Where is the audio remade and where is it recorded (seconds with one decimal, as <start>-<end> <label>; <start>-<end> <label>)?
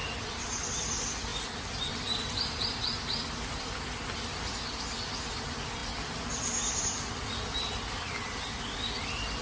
0.0-9.4 recorded